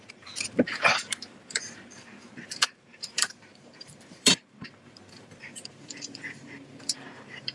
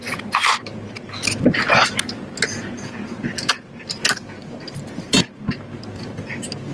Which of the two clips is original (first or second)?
second